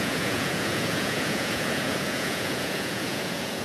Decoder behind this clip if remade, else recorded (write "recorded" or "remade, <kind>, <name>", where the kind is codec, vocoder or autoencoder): remade, vocoder, Vocos